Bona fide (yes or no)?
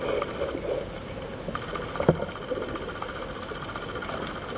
yes